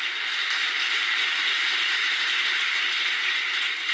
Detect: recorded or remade recorded